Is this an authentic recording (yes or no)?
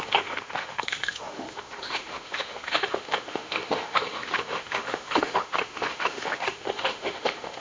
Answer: no